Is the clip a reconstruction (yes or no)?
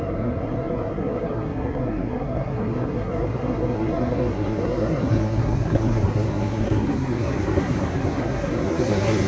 yes